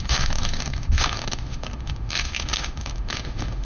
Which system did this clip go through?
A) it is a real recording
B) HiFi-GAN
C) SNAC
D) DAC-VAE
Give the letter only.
D